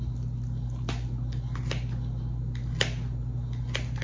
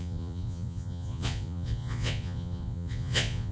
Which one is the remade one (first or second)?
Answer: second